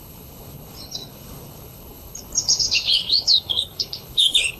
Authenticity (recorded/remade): remade